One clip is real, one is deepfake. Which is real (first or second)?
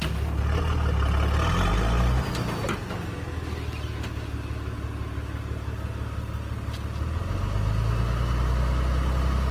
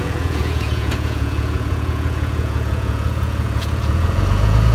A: first